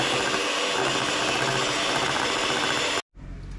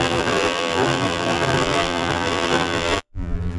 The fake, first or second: second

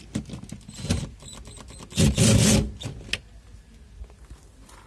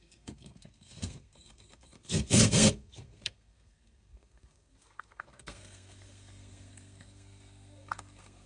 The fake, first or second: second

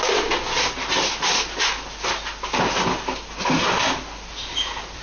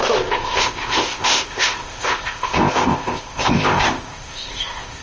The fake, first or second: second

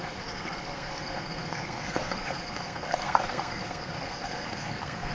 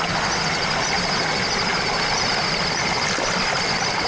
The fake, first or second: first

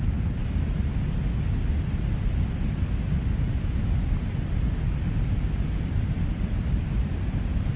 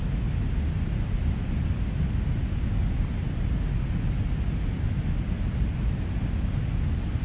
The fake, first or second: first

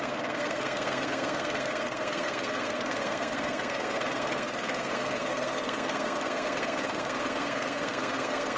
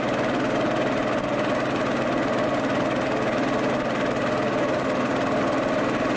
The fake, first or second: first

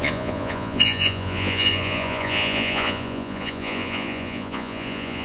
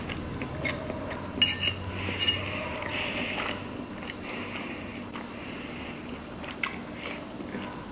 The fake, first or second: first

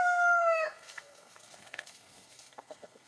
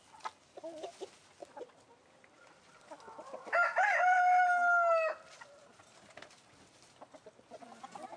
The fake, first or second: first